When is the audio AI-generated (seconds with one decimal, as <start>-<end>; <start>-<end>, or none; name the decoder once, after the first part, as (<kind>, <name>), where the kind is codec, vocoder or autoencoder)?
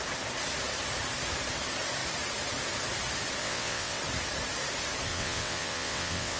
3.4-4.0 (vocoder, WaveNeXt); 5.1-6.4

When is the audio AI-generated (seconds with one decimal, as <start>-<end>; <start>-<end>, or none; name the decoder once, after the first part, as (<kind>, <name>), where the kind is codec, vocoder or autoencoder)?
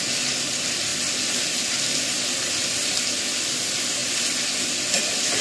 none